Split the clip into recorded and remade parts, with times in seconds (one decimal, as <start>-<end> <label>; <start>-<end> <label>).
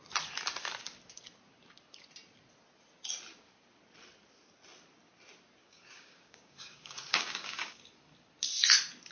0.0-5.6 recorded; 5.6-7.8 remade; 7.8-9.1 recorded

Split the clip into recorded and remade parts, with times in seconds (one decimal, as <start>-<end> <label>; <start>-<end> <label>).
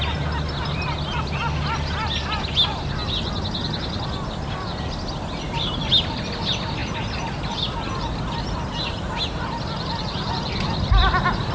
0.0-11.5 recorded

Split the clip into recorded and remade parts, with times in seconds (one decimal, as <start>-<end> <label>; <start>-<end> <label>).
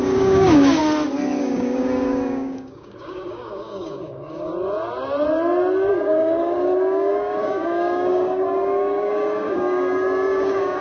0.0-0.8 remade; 0.8-1.4 recorded; 1.4-4.5 remade; 4.5-5.9 recorded; 5.9-10.8 remade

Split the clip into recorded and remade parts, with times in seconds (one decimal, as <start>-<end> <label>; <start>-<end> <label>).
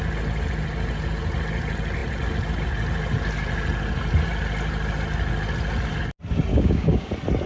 0.0-6.5 recorded; 6.5-7.1 remade; 7.1-7.5 recorded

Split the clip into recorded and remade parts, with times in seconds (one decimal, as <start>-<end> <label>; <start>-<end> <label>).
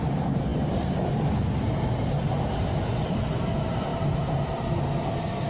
0.0-5.5 recorded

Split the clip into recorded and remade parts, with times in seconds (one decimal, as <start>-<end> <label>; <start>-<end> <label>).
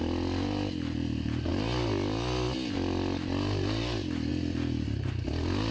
0.0-5.7 recorded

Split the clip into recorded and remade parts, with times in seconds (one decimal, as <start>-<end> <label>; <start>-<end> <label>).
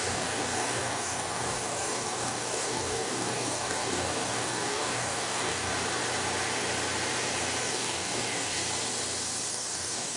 0.0-5.7 remade; 5.7-7.6 recorded; 7.6-8.6 remade; 8.6-9.5 recorded; 9.5-10.2 remade